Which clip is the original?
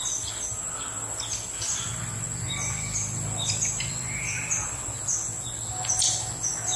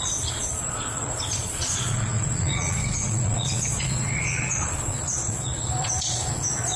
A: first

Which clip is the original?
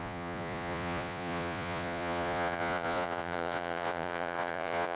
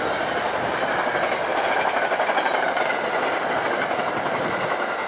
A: second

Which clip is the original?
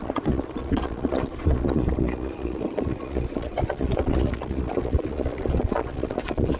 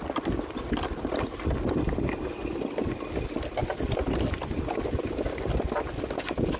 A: second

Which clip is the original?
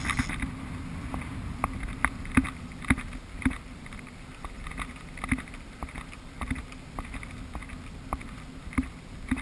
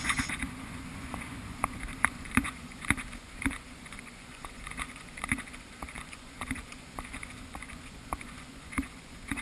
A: first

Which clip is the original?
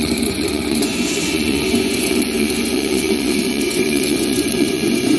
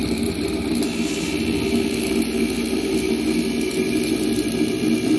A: second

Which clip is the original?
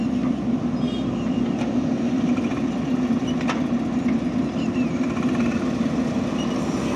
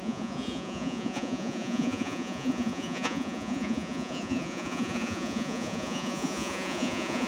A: first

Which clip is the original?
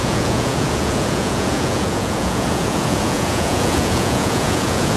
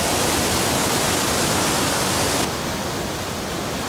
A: second